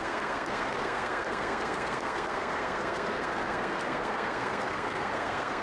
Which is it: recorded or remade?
remade